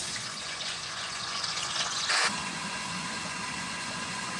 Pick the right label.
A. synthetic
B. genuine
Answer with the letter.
A